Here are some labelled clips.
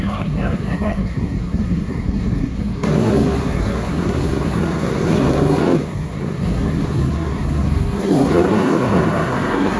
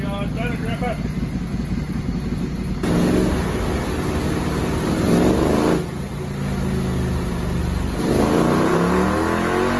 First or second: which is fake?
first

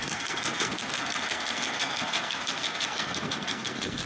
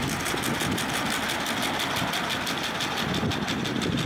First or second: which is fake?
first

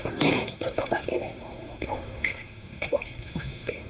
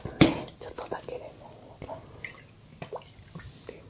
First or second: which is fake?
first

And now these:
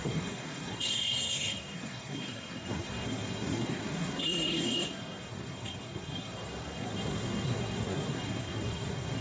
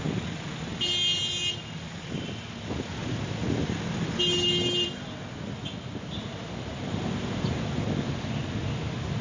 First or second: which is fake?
first